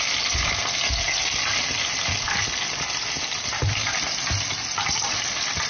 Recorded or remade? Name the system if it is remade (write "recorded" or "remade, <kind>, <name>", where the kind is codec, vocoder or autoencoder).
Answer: recorded